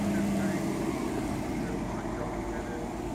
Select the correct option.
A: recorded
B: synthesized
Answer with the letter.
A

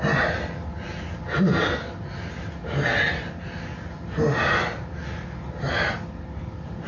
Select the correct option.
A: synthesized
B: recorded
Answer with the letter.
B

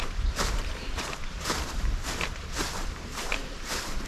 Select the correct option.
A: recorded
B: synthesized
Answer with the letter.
B